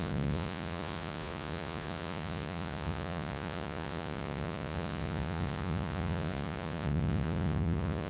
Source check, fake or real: fake